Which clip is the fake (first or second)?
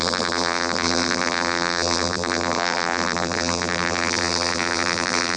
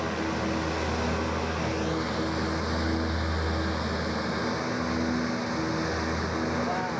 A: first